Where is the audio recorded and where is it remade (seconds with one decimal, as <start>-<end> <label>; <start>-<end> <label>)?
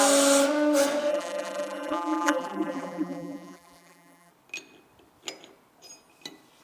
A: 0.0-1.1 recorded; 1.1-4.3 remade; 4.3-6.6 recorded